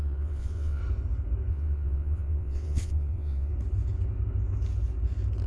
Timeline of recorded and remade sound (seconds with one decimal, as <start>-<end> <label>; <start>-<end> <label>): 0.0-0.8 remade; 0.8-1.5 recorded; 1.5-3.5 remade; 3.5-5.5 recorded